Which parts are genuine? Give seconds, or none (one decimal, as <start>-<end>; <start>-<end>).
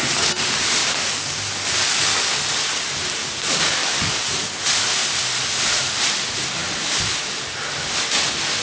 0.0-0.8; 2.4-3.2; 4.6-8.6